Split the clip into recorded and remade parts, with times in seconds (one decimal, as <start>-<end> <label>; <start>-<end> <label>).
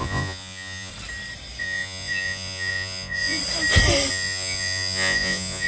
0.0-0.9 remade; 0.9-1.6 recorded; 1.6-3.4 remade; 3.4-4.1 recorded; 4.1-5.7 remade